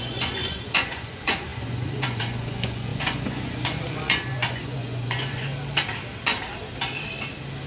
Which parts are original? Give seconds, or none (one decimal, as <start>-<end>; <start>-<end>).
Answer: 5.5-7.7